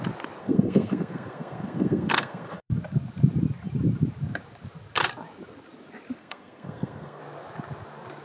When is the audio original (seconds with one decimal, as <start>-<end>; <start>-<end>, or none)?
0.0-0.4; 2.7-6.2; 7.2-8.2